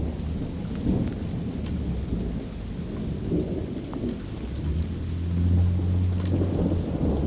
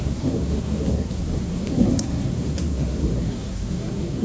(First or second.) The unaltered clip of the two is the first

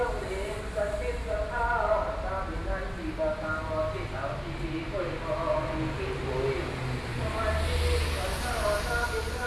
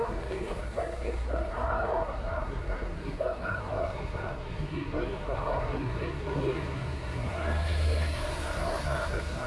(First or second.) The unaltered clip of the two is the first